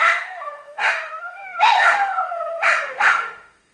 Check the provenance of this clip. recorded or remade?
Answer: remade